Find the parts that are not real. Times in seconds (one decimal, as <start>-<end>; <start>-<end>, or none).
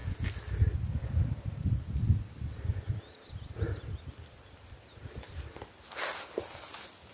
none